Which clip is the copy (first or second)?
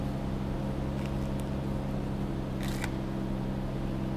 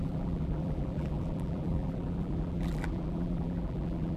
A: second